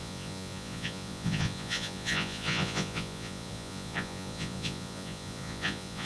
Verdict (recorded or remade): remade